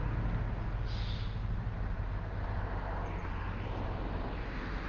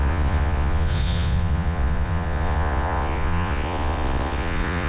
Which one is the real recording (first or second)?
first